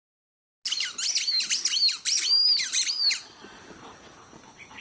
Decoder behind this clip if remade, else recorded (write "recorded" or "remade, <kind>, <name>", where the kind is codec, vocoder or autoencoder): recorded